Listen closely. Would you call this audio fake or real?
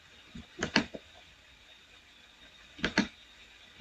real